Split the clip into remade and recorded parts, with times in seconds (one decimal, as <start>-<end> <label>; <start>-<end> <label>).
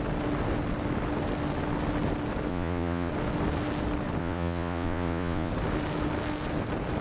0.0-2.5 recorded; 2.5-3.1 remade; 3.1-4.2 recorded; 4.2-5.5 remade; 5.5-7.0 recorded